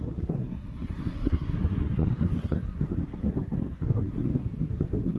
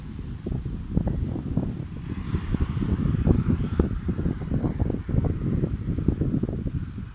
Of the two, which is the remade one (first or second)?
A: first